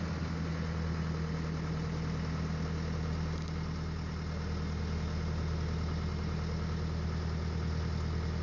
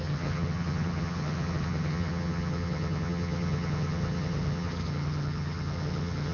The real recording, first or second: first